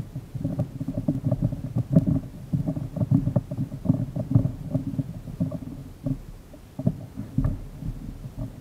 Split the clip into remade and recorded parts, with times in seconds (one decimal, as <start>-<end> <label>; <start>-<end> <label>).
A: 0.0-5.8 remade; 5.8-6.9 recorded; 6.9-8.6 remade